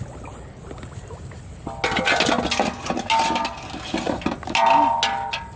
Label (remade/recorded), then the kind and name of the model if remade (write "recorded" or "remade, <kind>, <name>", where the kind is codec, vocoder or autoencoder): recorded